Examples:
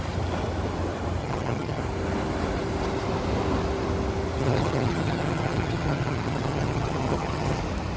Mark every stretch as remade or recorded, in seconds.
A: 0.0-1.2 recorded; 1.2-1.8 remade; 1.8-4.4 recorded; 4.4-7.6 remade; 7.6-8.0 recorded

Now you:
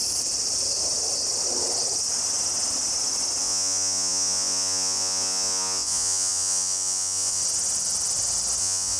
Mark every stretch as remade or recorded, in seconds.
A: 0.0-3.4 recorded; 3.4-7.4 remade; 7.4-8.6 recorded; 8.6-9.0 remade

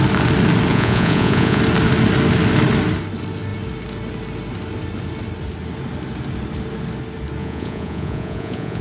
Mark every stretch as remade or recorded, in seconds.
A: 0.0-0.7 recorded; 0.7-1.6 remade; 1.6-7.4 recorded; 7.4-8.8 remade

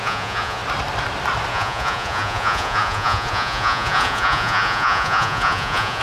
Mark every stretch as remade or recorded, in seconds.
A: 0.0-0.6 remade; 0.6-1.5 recorded; 1.5-6.0 remade

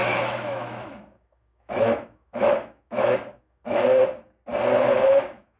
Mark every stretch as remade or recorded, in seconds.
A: 0.0-4.0 remade; 4.0-5.0 recorded; 5.0-5.6 remade

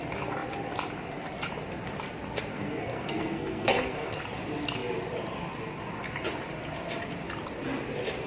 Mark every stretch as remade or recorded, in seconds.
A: 0.0-2.5 recorded; 2.5-4.2 remade; 4.2-8.3 recorded

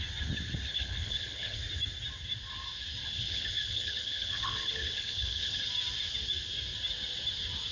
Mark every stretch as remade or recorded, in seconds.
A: 0.0-0.7 recorded; 0.7-1.6 remade; 1.6-3.0 recorded; 3.0-5.6 remade; 5.6-7.7 recorded